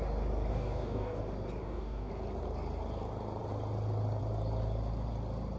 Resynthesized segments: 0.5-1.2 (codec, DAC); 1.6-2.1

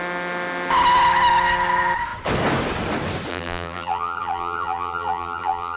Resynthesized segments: 3.3-5.8 (vocoder, BigVGAN v2)

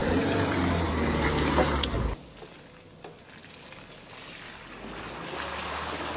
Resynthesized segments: 0.0-0.9 (vocoder, BigVGAN v2); 1.6-2.2; 3.4-4.5

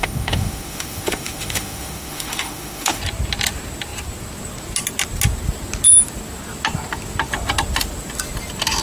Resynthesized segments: 0.0-3.0 (autoencoder, DAC-VAE)

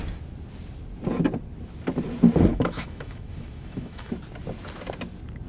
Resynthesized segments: 2.5-4.1 (autoencoder, DAC-VAE)

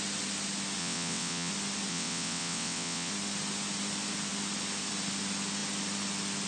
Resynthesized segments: 0.8-1.5 (vocoder, WaveNeXt); 1.9-3.1

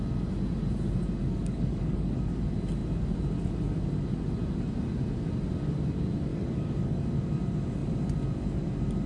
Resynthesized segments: 1.2-2.4 (codec, DAC); 6.3-7.0

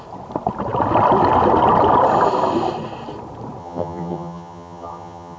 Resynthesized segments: 3.6-5.4 (vocoder, HiFi-GAN)